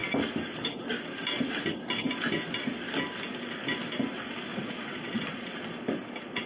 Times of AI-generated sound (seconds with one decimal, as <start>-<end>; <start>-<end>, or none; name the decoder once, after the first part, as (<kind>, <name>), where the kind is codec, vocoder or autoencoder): 4.5-5.5 (vocoder, Vocos)